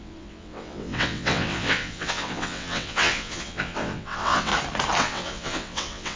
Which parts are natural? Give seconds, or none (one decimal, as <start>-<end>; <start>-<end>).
4.5-5.0